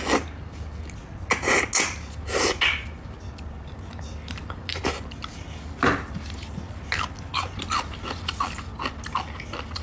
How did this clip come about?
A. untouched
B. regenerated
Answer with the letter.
A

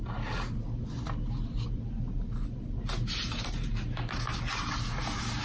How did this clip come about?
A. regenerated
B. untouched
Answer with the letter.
B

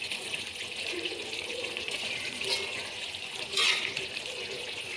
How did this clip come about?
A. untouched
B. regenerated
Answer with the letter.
B